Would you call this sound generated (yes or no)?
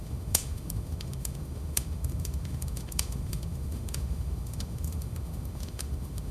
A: yes